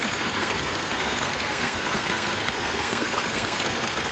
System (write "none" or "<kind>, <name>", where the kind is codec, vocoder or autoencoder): codec, SNAC